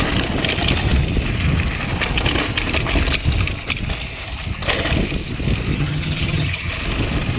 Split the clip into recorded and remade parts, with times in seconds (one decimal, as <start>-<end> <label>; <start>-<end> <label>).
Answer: 0.0-5.7 recorded; 5.7-6.7 remade; 6.7-7.4 recorded

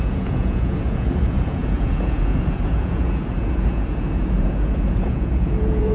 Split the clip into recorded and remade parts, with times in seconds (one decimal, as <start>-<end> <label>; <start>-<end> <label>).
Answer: 0.0-5.9 remade

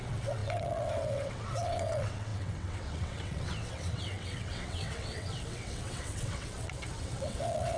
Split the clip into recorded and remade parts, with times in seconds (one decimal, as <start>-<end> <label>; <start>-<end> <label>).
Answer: 0.0-7.8 remade